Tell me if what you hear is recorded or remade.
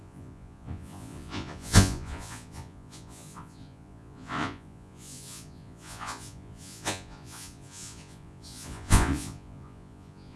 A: remade